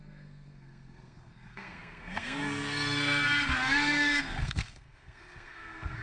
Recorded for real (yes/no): no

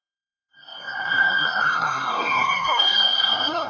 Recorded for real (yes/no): no